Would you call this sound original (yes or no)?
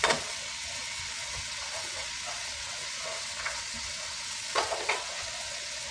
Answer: no